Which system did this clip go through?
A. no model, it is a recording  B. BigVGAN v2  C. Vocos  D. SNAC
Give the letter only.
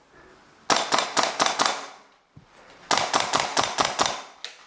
A